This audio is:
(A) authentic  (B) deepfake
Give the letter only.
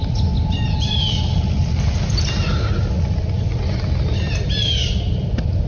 A